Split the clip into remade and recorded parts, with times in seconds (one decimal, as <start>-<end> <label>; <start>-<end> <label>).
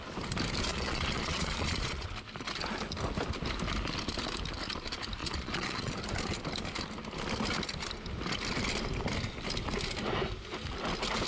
0.0-0.7 recorded; 0.7-2.1 remade; 2.1-5.2 recorded; 5.2-5.9 remade; 5.9-11.3 recorded